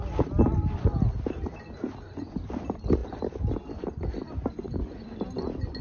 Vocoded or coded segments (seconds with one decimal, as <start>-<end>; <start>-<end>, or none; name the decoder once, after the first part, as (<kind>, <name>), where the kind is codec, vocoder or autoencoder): none